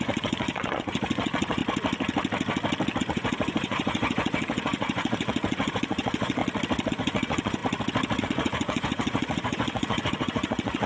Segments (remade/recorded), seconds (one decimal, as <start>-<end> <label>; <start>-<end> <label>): 0.0-1.6 remade; 1.6-3.0 recorded; 3.0-6.4 remade; 6.4-6.9 recorded; 6.9-7.6 remade; 7.6-8.2 recorded; 8.2-10.9 remade